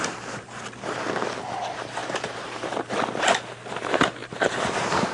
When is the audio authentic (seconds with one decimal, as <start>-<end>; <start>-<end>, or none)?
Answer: 0.0-2.0; 2.8-4.2